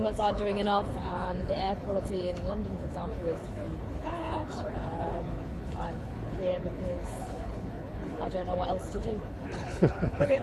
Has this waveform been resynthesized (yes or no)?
yes